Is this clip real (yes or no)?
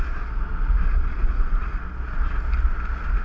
yes